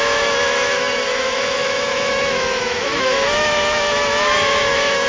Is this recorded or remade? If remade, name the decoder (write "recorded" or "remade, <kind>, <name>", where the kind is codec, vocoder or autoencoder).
remade, autoencoder, DAC-VAE